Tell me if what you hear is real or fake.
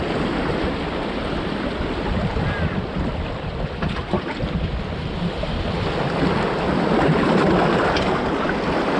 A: real